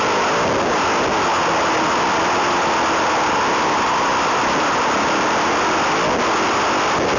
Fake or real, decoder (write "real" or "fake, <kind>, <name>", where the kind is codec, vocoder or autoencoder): real